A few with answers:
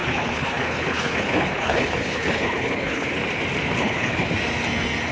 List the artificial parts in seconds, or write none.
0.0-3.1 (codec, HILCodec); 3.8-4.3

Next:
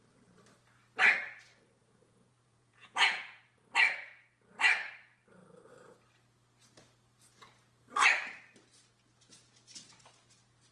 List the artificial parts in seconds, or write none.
1.8-3.4 (vocoder, Vocos)

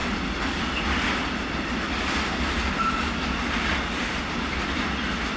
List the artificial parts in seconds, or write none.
none

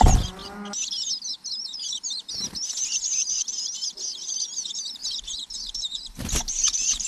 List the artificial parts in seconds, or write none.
5.0-7.1 (vocoder, BigVGAN v2)

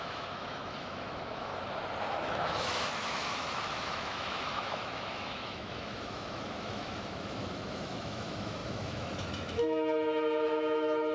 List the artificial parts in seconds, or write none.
0.0-1.5 (autoencoder, DAC-VAE); 2.1-11.1

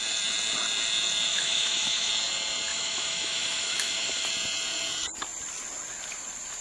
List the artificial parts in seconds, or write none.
1.3-2.1 (autoencoder, DAC-VAE); 2.7-4.3